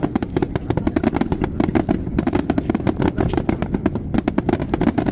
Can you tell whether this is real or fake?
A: fake